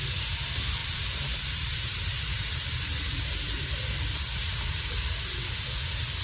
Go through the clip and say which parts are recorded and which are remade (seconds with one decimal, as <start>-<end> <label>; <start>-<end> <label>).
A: 0.0-0.8 recorded; 0.8-3.7 remade; 3.7-6.2 recorded